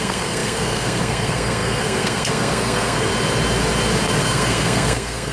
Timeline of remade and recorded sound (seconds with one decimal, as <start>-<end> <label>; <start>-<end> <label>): 0.0-3.1 remade; 3.1-4.2 recorded; 4.2-5.3 remade